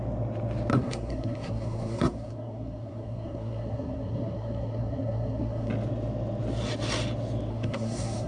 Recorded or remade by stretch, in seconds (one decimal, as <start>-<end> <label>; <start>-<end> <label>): 0.0-0.7 recorded; 0.7-5.7 remade; 5.7-7.5 recorded; 7.5-8.3 remade

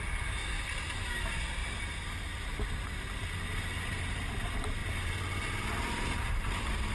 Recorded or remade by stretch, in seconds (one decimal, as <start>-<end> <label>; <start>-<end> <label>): 0.0-6.9 recorded

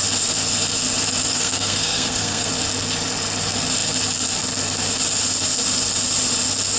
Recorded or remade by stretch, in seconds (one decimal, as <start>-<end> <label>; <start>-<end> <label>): 0.0-1.3 recorded; 1.3-2.5 remade; 2.5-6.8 recorded

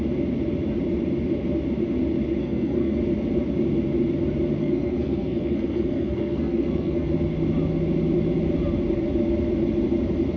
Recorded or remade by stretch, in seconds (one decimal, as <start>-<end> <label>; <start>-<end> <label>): 0.0-2.4 recorded; 2.4-3.0 remade; 3.0-4.6 recorded; 4.6-7.1 remade; 7.1-10.4 recorded

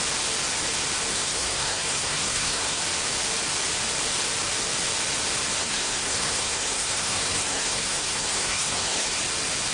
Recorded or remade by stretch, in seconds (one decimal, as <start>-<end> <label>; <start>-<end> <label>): 0.0-1.1 recorded; 1.1-2.8 remade; 2.8-5.6 recorded; 5.6-9.2 remade; 9.2-9.7 recorded